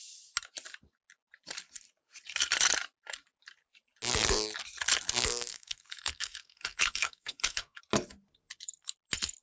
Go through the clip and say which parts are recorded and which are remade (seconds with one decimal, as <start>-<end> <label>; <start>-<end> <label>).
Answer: 0.0-5.5 recorded; 5.5-7.8 remade; 7.8-9.4 recorded